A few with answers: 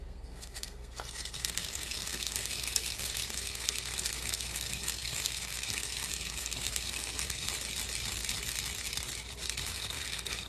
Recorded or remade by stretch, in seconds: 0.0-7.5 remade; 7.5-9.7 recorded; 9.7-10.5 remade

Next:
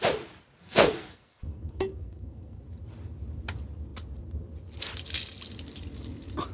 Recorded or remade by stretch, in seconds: 0.0-0.6 recorded; 0.6-2.6 remade; 2.6-6.5 recorded

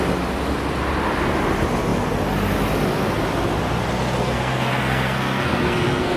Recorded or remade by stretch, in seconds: 0.0-4.2 recorded; 4.2-6.2 remade

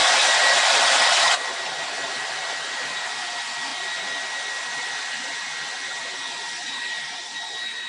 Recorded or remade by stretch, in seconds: 0.0-7.9 recorded

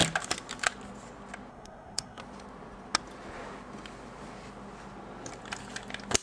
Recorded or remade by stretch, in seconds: 0.0-1.5 recorded; 1.5-2.2 remade; 2.2-6.2 recorded

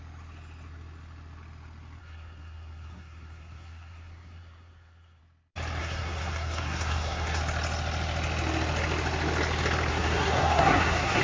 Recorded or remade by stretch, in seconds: 0.0-2.0 recorded; 2.0-5.2 remade; 5.2-5.8 recorded; 5.8-7.4 remade; 7.4-9.9 recorded; 9.9-11.2 remade

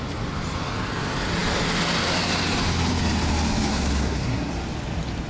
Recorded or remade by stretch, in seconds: 0.0-3.7 recorded; 3.7-4.5 remade; 4.5-5.3 recorded

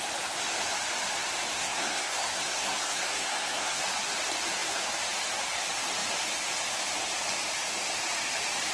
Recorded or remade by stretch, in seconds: 0.0-1.5 recorded; 1.5-3.8 remade; 3.8-8.7 recorded